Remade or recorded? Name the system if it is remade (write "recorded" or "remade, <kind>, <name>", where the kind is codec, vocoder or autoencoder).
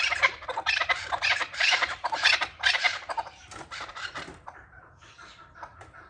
remade, vocoder, BigVGAN v2